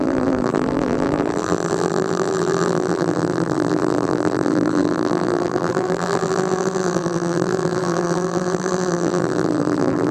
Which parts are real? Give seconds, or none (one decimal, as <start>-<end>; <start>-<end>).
none